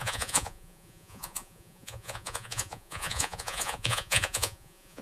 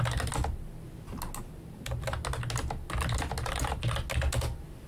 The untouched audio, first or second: second